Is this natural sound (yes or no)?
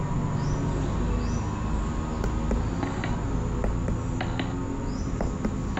yes